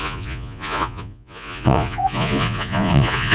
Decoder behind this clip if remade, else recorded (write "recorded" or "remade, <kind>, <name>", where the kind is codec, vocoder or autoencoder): remade, vocoder, Vocos